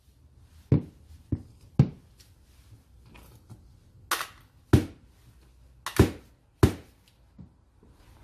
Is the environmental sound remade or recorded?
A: recorded